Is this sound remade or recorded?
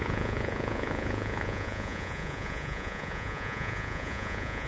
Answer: remade